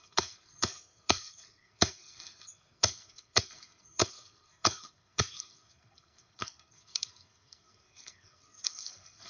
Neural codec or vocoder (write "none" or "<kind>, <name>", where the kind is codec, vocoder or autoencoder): codec, SNAC